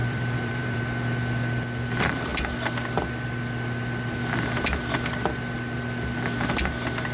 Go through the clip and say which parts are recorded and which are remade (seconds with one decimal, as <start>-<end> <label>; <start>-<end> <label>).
0.0-0.8 remade; 0.8-7.1 recorded